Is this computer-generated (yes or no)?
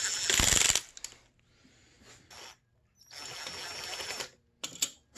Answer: no